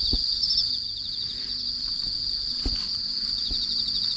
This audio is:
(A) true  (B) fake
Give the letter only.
A